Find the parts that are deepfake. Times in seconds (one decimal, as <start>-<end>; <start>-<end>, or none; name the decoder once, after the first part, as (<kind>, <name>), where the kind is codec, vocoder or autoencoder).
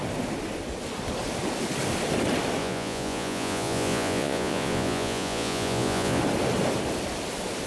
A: 2.6-6.2 (vocoder, Vocos)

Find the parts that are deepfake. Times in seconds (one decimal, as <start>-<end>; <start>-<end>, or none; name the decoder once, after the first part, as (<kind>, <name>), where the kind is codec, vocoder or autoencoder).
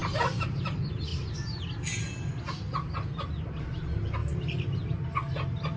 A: 0.0-0.6 (vocoder, BigVGAN v2)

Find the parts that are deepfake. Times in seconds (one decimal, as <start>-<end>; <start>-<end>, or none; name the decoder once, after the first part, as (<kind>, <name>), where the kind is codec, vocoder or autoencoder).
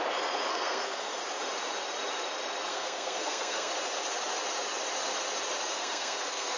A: 0.5-1.2 (codec, SNAC); 2.7-3.7; 5.7-6.6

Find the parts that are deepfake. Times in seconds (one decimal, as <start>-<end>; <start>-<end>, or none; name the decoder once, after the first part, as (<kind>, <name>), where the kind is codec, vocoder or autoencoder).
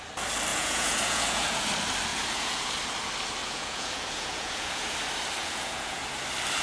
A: 0.5-1.7 (vocoder, Vocos); 2.1-2.7; 3.4-4.9; 5.4-6.0